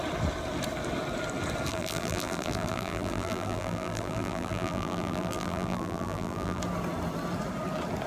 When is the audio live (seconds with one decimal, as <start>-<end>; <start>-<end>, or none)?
0.0-1.7; 6.6-8.1